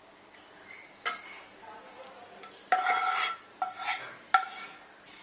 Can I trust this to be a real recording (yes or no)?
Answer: yes